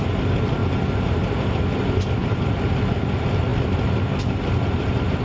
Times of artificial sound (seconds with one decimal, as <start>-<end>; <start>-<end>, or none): 0.6-1.5; 2.2-2.8